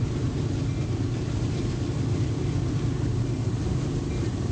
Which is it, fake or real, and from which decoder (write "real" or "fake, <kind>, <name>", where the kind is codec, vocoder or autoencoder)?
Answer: fake, vocoder, BigVGAN v2